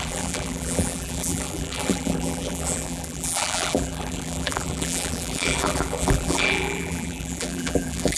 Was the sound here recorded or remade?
remade